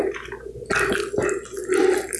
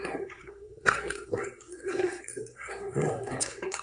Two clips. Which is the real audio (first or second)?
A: first